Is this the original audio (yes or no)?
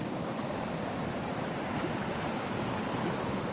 no